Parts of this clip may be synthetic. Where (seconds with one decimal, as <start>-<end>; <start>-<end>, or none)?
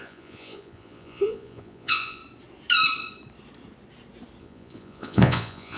0.0-2.2; 4.4-5.8